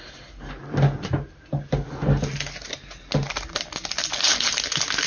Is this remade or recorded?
recorded